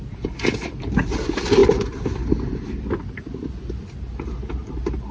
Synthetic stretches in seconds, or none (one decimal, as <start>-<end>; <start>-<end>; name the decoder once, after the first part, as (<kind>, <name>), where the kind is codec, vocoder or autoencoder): none